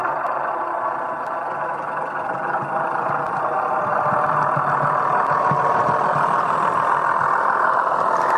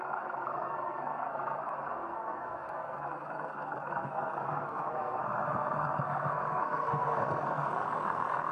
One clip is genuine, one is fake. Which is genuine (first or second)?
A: first